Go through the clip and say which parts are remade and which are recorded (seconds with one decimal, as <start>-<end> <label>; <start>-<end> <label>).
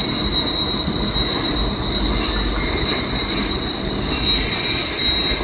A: 0.0-5.4 recorded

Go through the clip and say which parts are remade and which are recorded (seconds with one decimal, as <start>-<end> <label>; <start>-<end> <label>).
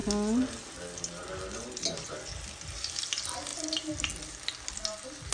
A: 0.0-5.3 recorded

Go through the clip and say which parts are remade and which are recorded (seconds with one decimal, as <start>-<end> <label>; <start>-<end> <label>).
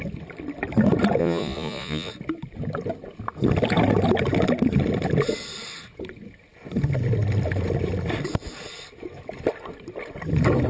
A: 0.0-1.2 recorded; 1.2-2.1 remade; 2.1-10.7 recorded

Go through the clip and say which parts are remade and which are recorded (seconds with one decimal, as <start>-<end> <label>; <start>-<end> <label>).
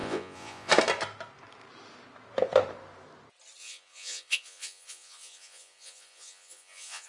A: 0.0-0.7 remade; 0.7-3.6 recorded; 3.6-7.1 remade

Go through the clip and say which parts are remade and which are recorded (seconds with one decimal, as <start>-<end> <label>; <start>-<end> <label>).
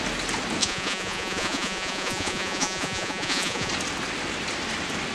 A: 0.0-0.6 recorded; 0.6-3.7 remade; 3.7-5.1 recorded